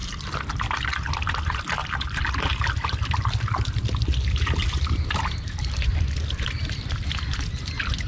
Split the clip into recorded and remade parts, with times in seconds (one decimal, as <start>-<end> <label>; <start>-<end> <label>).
0.0-1.3 recorded; 1.3-8.1 remade